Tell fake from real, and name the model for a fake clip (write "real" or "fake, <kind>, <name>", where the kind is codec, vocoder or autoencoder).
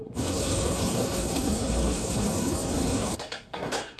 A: fake, codec, SNAC